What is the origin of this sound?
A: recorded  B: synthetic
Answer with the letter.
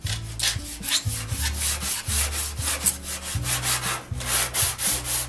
A